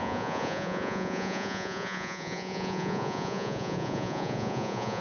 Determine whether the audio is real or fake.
fake